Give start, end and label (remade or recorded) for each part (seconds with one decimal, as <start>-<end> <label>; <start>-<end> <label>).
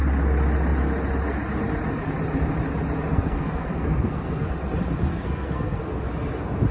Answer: 0.0-3.1 recorded; 3.1-4.5 remade; 4.5-5.1 recorded; 5.1-5.8 remade; 5.8-6.7 recorded